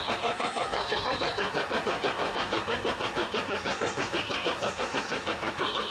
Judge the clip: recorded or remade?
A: remade